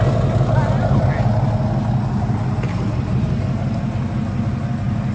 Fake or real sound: real